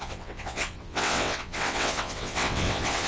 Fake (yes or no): yes